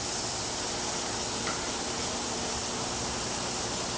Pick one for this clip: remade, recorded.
recorded